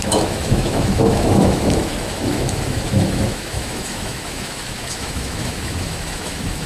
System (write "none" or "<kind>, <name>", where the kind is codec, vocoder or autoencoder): autoencoder, DAC-VAE